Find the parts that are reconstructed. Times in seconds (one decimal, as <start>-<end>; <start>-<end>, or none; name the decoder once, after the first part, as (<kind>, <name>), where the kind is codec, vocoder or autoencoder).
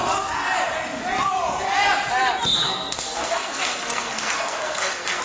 2.5-5.2 (codec, SNAC)